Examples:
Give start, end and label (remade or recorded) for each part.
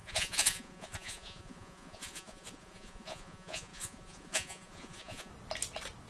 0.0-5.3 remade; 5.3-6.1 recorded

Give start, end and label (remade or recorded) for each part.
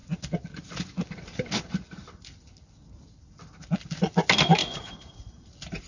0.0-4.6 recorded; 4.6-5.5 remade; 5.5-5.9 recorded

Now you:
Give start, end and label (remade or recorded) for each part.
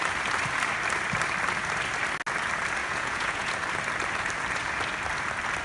0.0-2.8 recorded; 2.8-3.5 remade; 3.5-5.6 recorded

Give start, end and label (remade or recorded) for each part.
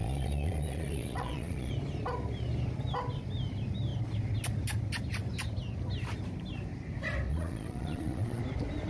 0.0-1.7 remade; 1.7-7.3 recorded; 7.3-8.4 remade; 8.4-8.9 recorded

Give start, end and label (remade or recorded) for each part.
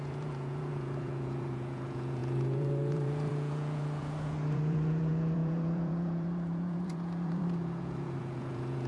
0.0-8.9 remade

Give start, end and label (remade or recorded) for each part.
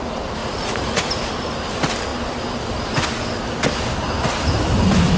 0.0-0.4 recorded; 0.4-1.0 remade; 1.0-5.2 recorded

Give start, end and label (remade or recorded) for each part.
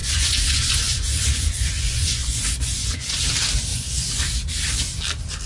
0.0-3.2 remade; 3.2-3.7 recorded; 3.7-4.2 remade; 4.2-5.5 recorded